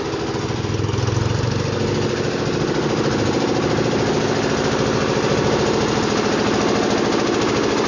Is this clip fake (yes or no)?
no